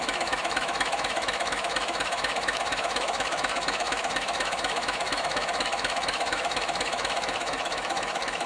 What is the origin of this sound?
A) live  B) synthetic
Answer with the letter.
B